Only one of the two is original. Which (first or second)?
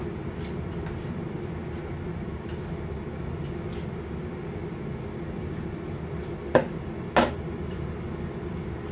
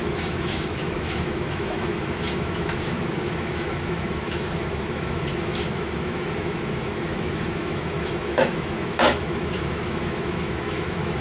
first